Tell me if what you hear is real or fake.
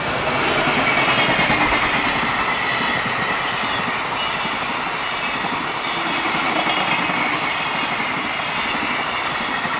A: real